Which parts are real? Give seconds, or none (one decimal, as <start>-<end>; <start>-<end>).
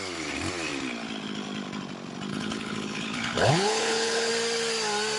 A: 0.0-2.3; 4.3-5.2